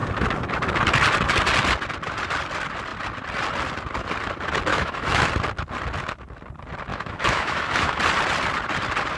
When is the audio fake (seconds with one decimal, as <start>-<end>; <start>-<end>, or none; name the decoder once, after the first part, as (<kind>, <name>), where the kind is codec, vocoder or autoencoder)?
4.7-5.3 (autoencoder, DAC-VAE); 6.9-8.0